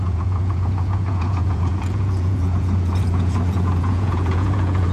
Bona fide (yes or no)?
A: no